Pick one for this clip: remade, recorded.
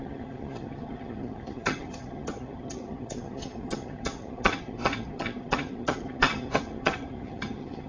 remade